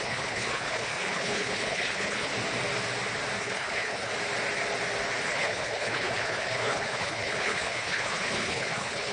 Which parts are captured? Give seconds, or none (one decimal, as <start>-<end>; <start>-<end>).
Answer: 2.3-3.4; 4.1-5.2